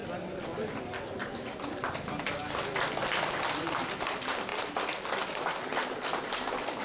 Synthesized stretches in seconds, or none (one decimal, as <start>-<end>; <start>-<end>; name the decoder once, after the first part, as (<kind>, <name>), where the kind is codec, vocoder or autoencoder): none